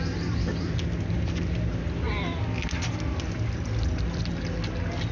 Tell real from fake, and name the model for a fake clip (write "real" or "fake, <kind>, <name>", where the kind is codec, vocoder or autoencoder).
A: real